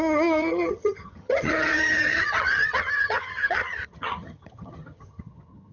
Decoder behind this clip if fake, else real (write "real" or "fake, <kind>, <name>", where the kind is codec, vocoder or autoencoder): fake, vocoder, HiFi-GAN